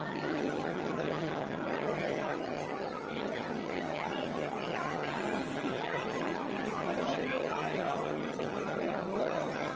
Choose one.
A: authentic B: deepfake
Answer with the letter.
B